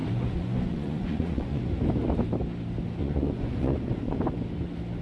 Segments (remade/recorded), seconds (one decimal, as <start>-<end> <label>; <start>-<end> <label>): 0.0-1.7 remade; 1.7-3.0 recorded; 3.0-4.2 remade; 4.2-5.0 recorded